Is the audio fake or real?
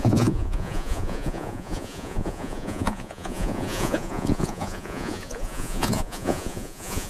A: fake